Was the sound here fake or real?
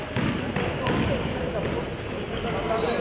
real